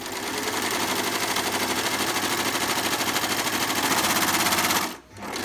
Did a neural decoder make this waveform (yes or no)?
no